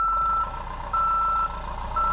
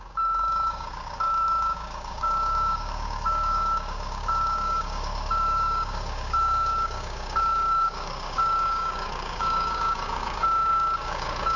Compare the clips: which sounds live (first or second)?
first